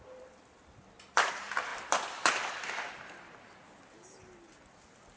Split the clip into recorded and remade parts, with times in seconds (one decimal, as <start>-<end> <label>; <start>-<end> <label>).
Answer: 0.0-5.2 recorded